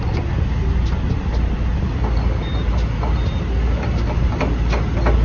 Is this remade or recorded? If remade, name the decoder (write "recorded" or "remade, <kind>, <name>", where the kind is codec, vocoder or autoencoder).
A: recorded